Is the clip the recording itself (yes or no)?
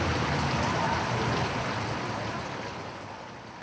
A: yes